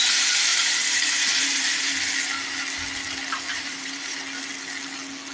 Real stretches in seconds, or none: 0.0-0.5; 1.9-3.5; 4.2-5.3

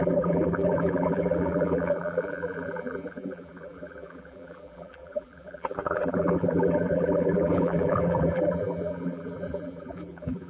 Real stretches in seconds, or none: none

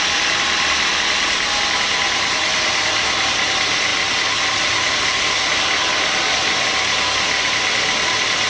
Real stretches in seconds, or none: 0.0-8.5

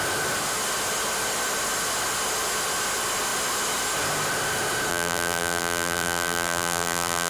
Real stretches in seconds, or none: 0.0-4.9